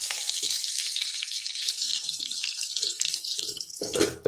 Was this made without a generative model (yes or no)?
no